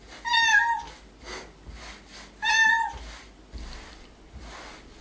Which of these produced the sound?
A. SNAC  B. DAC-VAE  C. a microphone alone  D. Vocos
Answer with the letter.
C